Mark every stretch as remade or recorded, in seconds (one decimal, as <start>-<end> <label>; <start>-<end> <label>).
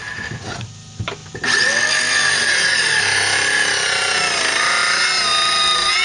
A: 0.0-6.0 recorded